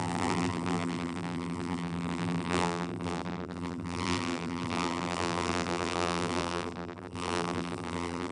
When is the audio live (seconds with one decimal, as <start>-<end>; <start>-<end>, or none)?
none

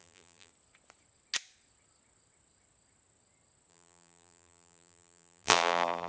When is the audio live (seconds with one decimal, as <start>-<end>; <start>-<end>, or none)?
0.5-3.7

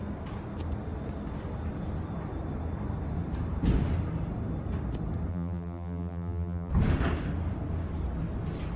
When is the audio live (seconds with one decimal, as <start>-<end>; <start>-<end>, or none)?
0.0-5.3; 6.7-8.8

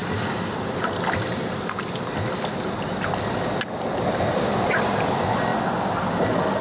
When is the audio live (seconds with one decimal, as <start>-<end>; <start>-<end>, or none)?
0.0-5.5; 6.0-6.6

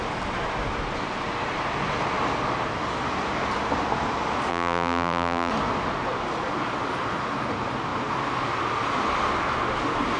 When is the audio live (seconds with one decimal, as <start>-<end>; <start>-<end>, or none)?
0.0-4.5; 5.5-10.2

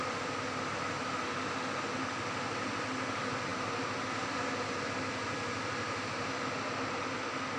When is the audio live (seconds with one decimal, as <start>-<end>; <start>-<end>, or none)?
0.0-7.6

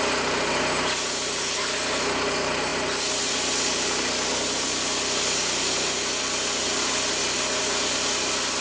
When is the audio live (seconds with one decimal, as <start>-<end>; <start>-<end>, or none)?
0.0-8.6

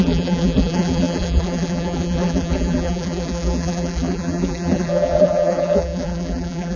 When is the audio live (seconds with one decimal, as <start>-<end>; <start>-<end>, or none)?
none